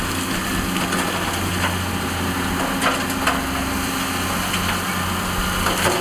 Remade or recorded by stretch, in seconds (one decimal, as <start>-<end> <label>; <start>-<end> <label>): 0.0-6.0 recorded